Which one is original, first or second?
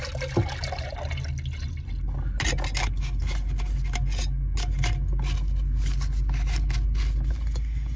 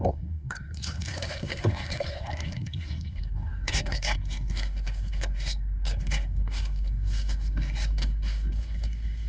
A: first